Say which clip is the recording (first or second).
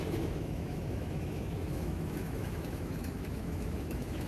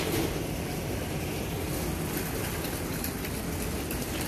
second